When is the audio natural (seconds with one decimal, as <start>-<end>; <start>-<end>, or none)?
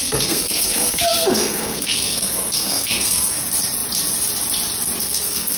3.4-5.0